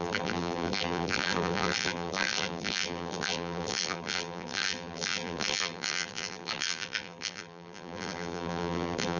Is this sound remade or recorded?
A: remade